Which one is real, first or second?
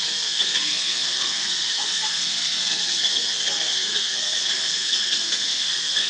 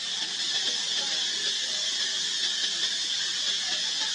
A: second